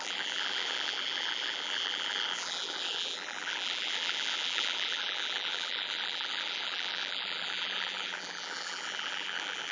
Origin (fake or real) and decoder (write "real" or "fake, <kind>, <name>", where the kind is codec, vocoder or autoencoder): fake, vocoder, BigVGAN v2